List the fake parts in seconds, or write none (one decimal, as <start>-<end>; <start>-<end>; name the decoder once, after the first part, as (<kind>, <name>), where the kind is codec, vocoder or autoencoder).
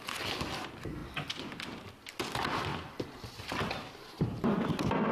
2.7-3.2 (vocoder, BigVGAN v2)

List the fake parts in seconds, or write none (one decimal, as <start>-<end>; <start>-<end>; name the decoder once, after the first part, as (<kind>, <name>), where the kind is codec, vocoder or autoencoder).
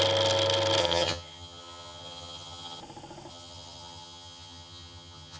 0.8-2.8 (vocoder, HiFi-GAN); 3.3-5.4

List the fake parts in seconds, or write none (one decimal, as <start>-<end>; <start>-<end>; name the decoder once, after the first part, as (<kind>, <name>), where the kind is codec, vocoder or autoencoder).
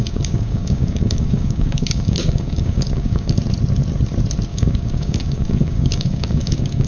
0.0-3.4 (codec, DAC); 4.5-6.9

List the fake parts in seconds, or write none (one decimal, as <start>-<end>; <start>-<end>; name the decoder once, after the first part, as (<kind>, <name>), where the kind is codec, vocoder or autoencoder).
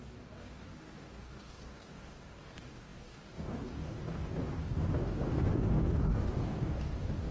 0.0-7.3 (codec, DAC)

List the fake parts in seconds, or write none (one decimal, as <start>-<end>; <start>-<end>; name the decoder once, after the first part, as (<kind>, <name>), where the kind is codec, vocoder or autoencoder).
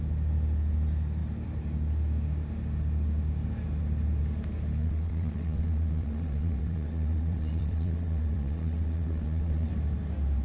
4.8-9.7 (vocoder, WaveNeXt)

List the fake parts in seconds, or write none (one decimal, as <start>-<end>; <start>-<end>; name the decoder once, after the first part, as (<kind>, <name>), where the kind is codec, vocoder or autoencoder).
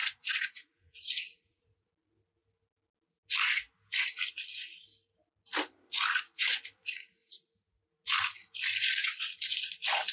0.0-1.9 (vocoder, Vocos); 9.0-9.7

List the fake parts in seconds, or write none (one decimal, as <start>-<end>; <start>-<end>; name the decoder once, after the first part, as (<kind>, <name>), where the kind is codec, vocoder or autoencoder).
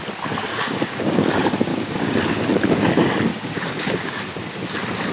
0.5-1.2 (codec, DAC); 1.7-2.2; 3.3-4.2